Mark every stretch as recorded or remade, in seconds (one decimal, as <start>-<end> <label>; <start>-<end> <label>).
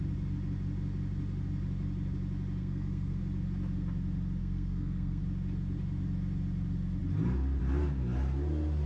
0.0-2.6 recorded; 2.6-3.2 remade; 3.2-4.4 recorded; 4.4-5.2 remade; 5.2-8.9 recorded